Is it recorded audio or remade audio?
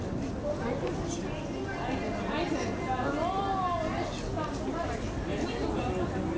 recorded